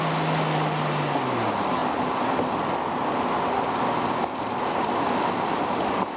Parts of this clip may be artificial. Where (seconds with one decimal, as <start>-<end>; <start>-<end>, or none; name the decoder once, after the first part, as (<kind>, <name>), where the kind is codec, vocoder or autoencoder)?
none